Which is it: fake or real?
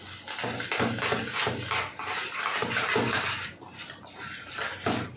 real